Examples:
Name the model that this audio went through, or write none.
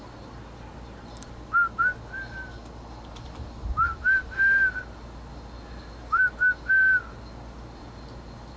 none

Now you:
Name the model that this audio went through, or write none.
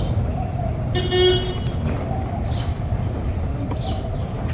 none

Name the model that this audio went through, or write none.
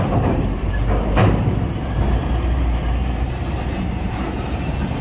vocoder, BigVGAN v2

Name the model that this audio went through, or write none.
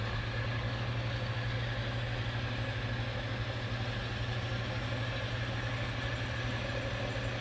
none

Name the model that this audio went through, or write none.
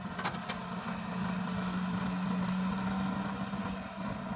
none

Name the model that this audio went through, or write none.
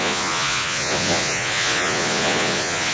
vocoder, Vocos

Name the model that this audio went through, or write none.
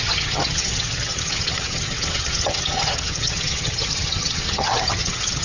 vocoder, HiFi-GAN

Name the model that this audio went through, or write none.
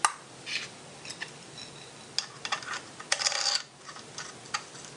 none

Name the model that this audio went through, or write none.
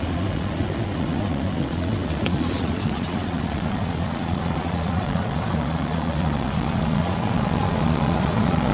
vocoder, Vocos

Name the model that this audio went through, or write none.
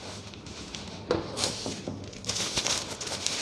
autoencoder, DAC-VAE